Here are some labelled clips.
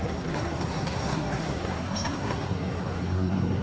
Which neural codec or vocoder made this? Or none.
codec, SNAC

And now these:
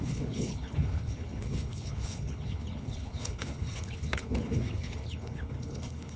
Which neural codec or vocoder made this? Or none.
codec, HILCodec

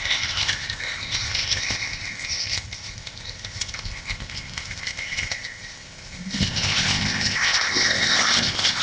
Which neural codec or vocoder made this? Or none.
codec, ZipCodec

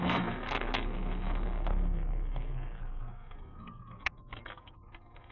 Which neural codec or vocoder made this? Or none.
codec, SNAC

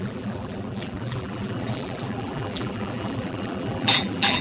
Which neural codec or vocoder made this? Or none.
vocoder, BigVGAN v2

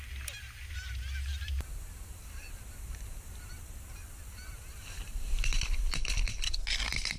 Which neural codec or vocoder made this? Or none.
none